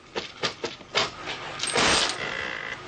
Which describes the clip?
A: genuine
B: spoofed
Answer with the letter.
A